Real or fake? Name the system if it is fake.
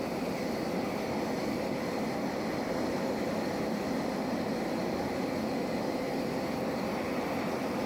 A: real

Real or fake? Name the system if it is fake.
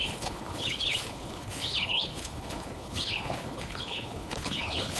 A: fake, codec, HILCodec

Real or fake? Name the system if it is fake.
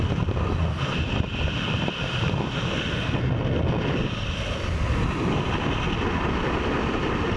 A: real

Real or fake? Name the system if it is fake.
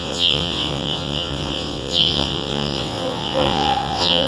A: fake, vocoder, WaveNeXt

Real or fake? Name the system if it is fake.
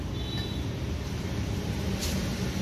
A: real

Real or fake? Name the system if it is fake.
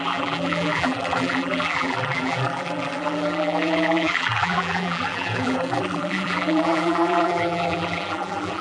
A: fake, vocoder, BigVGAN v2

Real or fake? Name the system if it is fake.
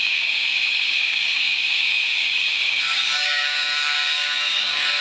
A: fake, codec, DAC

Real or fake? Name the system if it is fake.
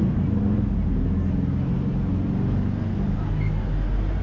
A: real